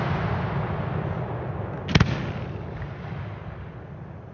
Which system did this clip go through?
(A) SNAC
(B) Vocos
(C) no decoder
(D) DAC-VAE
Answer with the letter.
C